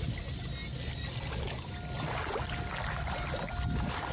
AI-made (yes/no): no